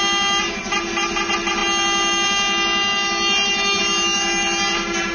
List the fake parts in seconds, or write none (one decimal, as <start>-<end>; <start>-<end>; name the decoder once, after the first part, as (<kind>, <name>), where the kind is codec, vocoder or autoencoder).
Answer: none